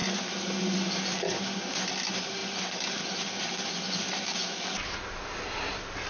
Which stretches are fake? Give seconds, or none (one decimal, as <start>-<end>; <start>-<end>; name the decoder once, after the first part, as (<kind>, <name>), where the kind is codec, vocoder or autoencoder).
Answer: none